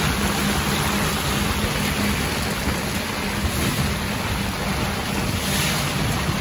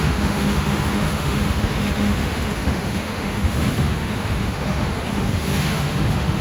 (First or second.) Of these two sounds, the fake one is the second